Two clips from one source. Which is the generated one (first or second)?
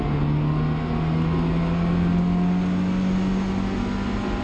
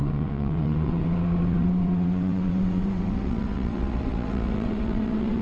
second